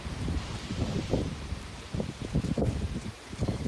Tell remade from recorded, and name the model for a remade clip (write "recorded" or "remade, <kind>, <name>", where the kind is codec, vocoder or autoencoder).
remade, vocoder, BigVGAN v2